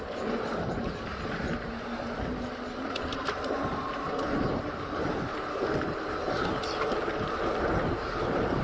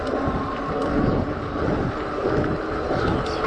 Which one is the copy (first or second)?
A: first